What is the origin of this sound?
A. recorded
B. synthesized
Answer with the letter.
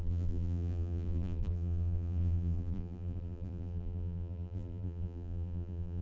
B